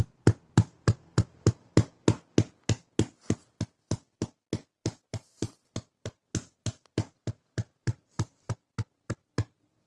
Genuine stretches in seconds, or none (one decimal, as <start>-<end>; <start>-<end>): 0.0-4.8